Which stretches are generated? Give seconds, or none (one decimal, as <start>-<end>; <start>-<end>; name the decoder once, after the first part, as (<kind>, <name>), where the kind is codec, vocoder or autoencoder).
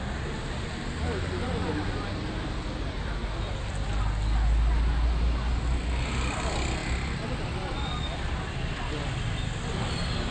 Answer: none